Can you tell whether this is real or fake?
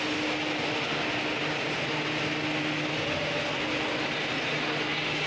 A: real